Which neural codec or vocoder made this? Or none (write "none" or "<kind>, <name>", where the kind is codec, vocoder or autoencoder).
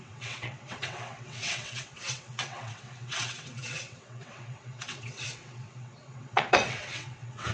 vocoder, WaveNeXt